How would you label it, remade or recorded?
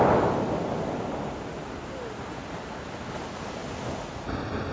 recorded